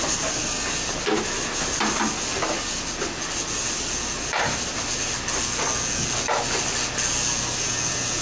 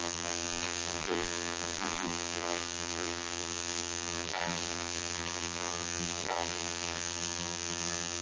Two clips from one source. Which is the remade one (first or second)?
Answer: second